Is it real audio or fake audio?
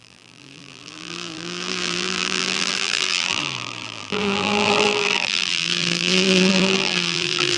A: fake